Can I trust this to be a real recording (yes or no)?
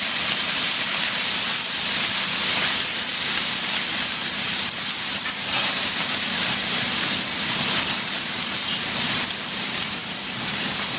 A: no